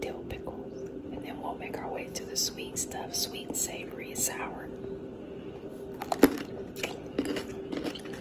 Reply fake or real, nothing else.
real